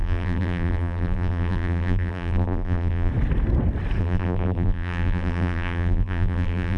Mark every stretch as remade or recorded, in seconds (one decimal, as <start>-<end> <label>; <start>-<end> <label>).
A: 0.0-3.1 remade; 3.1-4.0 recorded; 4.0-6.8 remade